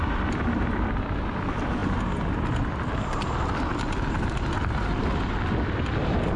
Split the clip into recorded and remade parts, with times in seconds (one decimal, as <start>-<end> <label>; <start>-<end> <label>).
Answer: 0.0-6.4 recorded